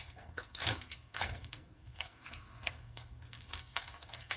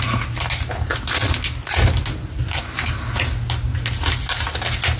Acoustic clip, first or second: second